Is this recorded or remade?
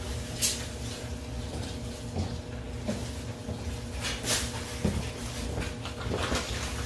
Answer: recorded